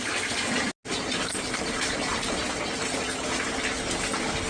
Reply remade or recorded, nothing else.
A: recorded